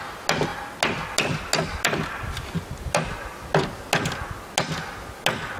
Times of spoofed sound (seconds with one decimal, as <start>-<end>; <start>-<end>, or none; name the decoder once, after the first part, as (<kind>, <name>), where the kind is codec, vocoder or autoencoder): none